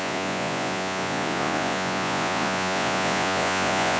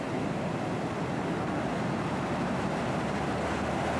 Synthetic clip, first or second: first